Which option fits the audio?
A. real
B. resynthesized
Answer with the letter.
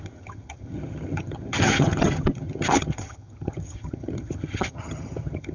B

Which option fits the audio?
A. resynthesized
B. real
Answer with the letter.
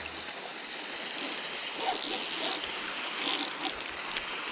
B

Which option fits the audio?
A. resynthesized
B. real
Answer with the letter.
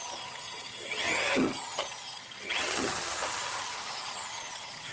A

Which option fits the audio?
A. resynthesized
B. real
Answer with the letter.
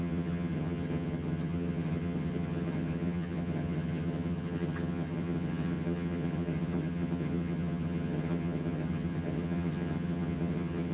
A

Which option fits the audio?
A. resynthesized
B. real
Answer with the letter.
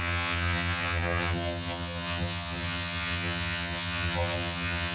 A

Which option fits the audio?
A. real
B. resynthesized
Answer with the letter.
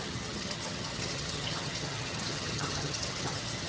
B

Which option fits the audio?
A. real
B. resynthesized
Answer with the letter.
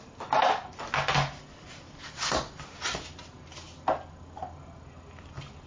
A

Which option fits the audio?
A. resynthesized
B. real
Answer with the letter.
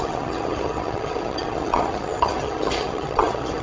A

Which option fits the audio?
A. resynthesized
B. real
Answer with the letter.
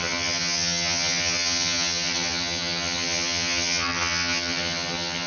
A